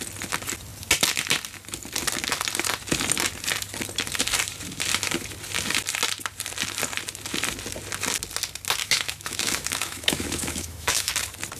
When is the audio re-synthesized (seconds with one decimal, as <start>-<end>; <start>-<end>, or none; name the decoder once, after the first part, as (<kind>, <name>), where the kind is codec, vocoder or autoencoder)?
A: 8.8-11.1 (autoencoder, DAC-VAE)